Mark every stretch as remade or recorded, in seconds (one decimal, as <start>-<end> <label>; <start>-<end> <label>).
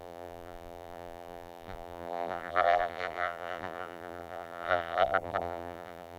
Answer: 0.0-6.2 remade